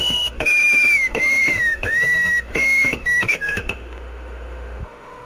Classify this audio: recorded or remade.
remade